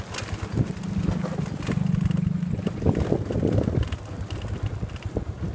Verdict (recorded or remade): recorded